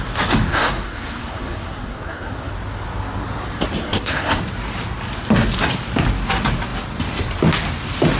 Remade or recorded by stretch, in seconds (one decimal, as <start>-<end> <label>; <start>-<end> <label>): 0.0-0.5 recorded; 0.5-2.5 remade; 2.5-3.8 recorded; 3.8-4.4 remade; 4.4-8.2 recorded

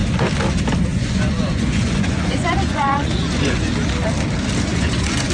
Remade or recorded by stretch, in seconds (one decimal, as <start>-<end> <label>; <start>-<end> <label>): 0.0-0.9 recorded; 0.9-3.7 remade; 3.7-4.7 recorded; 4.7-5.3 remade

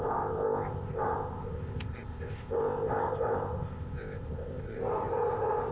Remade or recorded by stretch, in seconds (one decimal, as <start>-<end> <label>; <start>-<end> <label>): 0.0-4.8 remade; 4.8-5.7 recorded

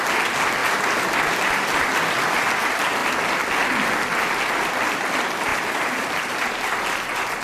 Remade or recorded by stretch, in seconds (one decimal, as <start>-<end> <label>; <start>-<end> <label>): 0.0-7.4 recorded

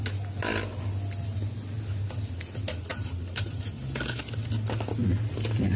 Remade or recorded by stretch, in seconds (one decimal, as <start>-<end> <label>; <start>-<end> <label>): 0.0-2.9 recorded; 2.9-4.2 remade; 4.2-5.8 recorded